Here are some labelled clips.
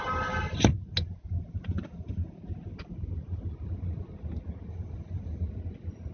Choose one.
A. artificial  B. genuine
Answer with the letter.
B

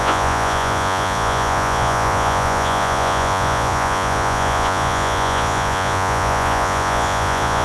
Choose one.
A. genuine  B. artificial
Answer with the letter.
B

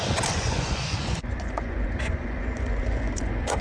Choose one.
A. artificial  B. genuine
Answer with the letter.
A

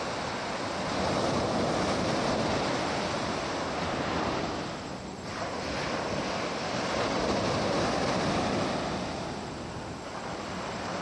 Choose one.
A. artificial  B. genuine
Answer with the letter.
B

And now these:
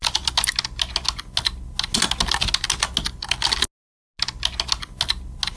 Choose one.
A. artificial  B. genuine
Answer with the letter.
B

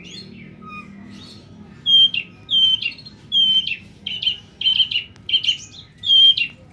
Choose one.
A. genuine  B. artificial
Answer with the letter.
A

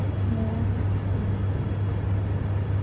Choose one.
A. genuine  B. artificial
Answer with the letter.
A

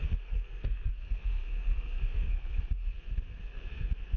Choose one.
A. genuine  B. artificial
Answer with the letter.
B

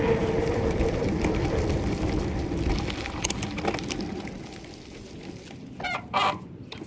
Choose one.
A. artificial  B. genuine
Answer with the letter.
B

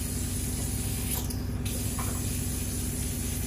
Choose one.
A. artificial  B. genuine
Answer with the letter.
B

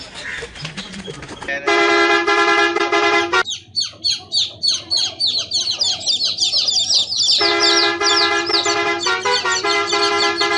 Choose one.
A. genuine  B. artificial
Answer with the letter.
A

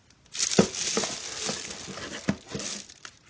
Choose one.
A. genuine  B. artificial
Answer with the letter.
A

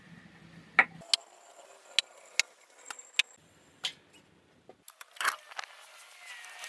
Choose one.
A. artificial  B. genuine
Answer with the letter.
B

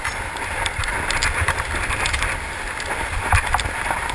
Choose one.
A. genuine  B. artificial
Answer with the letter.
A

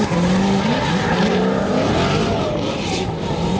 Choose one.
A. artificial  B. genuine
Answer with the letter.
B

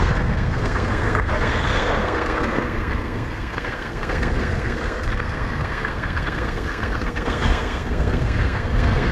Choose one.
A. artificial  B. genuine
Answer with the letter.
A